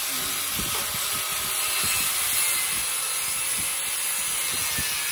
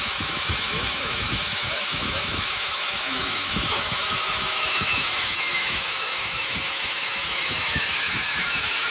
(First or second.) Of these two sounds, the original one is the first